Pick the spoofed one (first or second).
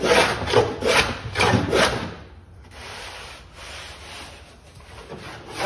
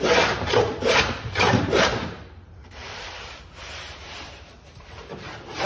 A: second